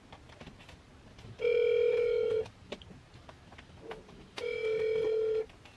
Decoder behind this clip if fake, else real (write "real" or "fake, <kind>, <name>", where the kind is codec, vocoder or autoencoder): real